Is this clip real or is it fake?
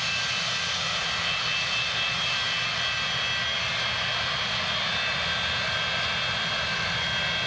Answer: real